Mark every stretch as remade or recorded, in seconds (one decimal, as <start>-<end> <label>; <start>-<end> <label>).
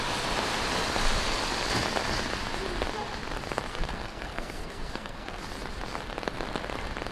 0.0-3.7 recorded; 3.7-5.4 remade; 5.4-7.1 recorded